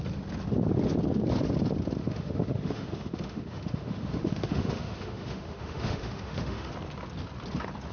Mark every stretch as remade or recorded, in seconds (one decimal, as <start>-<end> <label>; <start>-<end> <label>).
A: 0.0-2.0 recorded; 2.0-6.7 remade; 6.7-7.9 recorded